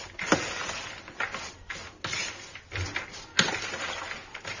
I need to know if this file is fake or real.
real